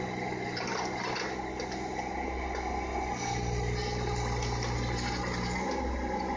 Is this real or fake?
real